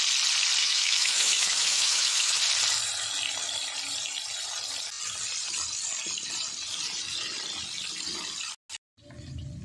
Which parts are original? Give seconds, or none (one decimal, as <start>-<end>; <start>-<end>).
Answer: 0.0-0.6; 2.4-9.6